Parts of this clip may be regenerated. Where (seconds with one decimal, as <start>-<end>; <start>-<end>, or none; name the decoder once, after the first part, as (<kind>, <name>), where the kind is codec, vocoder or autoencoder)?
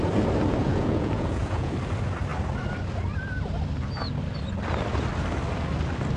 0.6-1.7 (vocoder, Vocos)